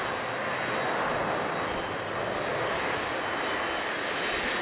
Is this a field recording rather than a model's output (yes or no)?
yes